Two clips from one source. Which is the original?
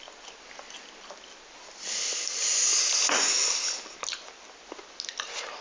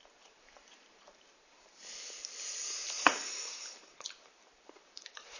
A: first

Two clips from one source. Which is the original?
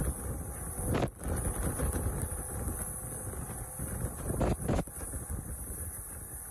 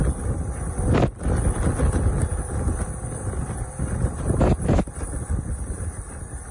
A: first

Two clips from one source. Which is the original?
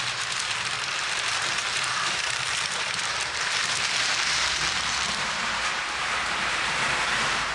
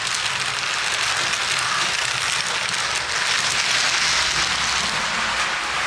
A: second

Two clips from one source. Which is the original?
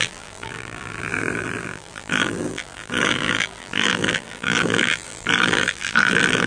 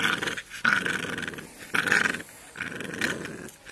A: second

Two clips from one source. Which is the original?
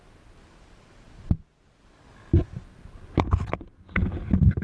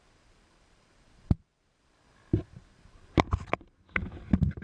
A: first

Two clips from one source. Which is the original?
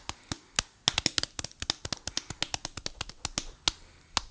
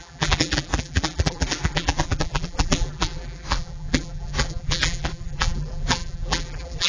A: first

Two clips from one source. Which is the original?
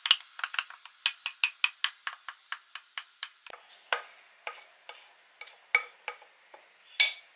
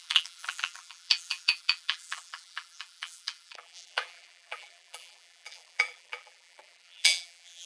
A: first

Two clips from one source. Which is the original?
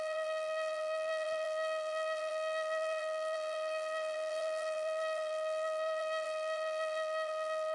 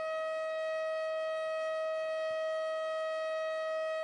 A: second